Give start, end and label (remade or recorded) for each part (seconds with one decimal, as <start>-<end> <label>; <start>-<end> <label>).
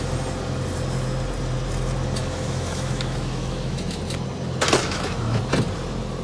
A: 0.0-2.2 recorded; 2.2-4.0 remade; 4.0-4.8 recorded; 4.8-5.4 remade; 5.4-6.2 recorded